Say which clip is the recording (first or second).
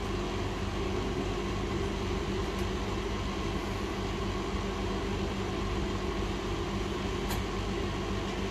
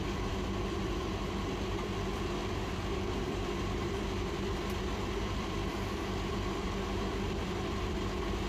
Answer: first